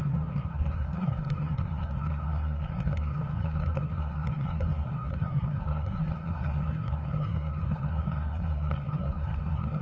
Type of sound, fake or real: fake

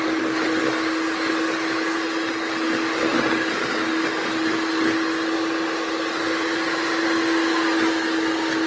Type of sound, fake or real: real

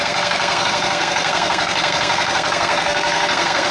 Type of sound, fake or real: fake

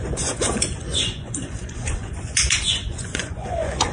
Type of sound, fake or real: fake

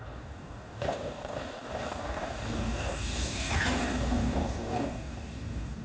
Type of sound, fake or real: fake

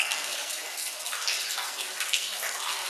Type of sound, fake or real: fake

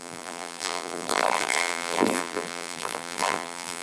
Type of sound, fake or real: fake